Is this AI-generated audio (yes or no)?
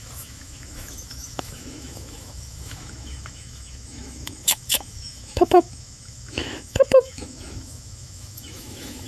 yes